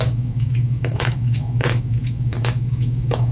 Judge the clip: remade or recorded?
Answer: remade